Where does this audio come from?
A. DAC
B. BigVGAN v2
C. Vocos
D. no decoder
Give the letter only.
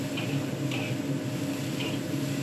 D